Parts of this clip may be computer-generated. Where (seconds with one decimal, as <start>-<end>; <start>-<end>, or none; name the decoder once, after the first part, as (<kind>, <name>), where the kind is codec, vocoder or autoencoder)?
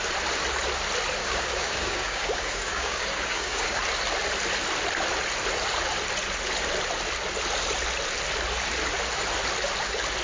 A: 1.2-3.8 (codec, DAC)